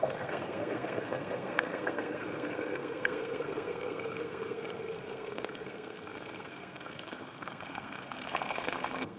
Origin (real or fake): fake